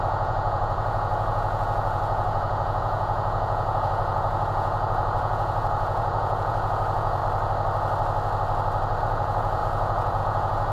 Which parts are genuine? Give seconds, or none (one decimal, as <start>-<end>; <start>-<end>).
7.2-9.0